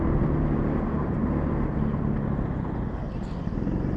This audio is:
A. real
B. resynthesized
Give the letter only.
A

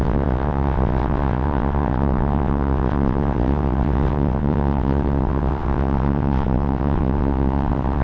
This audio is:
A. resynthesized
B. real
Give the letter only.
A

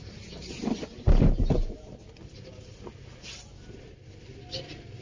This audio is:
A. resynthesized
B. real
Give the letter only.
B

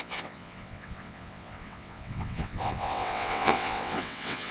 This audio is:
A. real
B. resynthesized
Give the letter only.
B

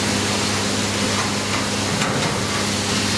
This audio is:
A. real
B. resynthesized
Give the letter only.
A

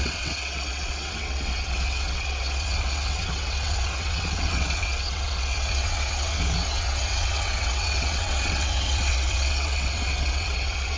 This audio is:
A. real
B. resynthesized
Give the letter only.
B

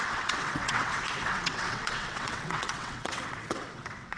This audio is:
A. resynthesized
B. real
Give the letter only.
A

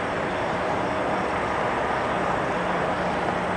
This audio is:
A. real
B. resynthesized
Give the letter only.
A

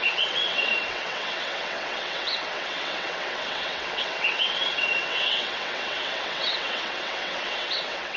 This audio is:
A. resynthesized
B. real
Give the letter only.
A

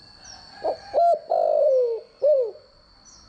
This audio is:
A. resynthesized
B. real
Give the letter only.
B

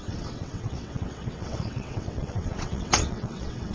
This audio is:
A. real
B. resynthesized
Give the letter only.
B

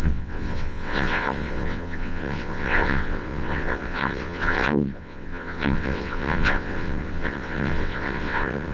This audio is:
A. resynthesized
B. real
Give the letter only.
A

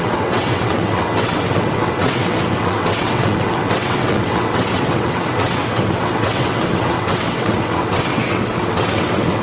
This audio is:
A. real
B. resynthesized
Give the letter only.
B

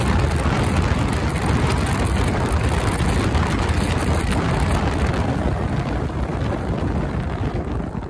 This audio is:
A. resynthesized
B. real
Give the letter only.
B